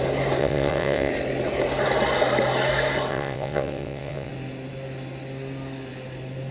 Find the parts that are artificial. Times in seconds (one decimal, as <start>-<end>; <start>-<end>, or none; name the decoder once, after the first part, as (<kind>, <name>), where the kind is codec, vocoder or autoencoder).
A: 0.4-1.1 (vocoder, WaveNeXt); 3.1-4.3